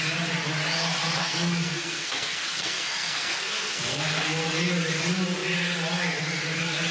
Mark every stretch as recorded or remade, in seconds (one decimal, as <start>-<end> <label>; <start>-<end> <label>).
0.0-1.2 recorded; 1.2-4.7 remade; 4.7-6.9 recorded